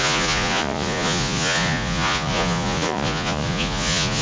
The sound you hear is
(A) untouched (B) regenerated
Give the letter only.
B